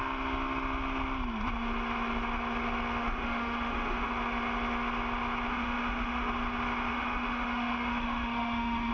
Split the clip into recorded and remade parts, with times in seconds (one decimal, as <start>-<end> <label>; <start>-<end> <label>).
0.0-3.0 recorded; 3.0-4.1 remade; 4.1-5.5 recorded; 5.5-6.3 remade; 6.3-6.9 recorded; 6.9-8.9 remade

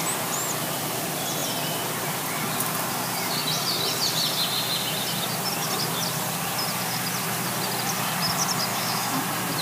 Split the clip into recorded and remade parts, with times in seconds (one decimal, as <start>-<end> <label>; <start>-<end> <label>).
0.0-8.7 recorded; 8.7-9.2 remade; 9.2-9.6 recorded

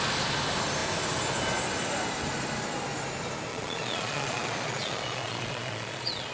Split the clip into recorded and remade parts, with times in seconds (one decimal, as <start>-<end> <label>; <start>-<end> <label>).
0.0-3.5 recorded; 3.5-6.3 remade

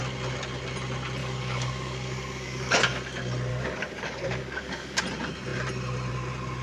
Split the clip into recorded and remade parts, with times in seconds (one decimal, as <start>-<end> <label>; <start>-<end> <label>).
0.0-1.2 recorded; 1.2-3.0 remade; 3.0-3.5 recorded; 3.5-5.0 remade; 5.0-6.6 recorded

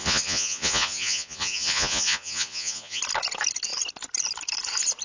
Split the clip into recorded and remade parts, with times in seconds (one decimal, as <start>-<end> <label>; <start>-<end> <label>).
0.0-3.0 remade; 3.0-5.0 recorded

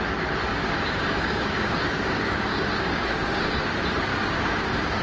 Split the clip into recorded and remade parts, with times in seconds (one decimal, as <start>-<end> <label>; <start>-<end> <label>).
0.0-0.5 recorded; 0.5-3.5 remade; 3.5-4.1 recorded; 4.1-5.0 remade

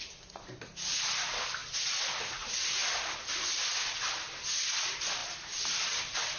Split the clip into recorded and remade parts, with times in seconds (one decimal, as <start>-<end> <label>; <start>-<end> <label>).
0.0-6.4 recorded